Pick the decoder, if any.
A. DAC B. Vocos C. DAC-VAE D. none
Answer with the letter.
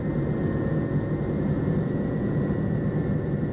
D